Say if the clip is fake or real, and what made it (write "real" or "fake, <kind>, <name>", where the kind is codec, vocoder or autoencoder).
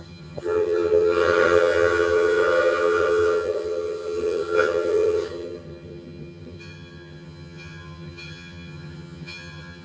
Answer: fake, vocoder, HiFi-GAN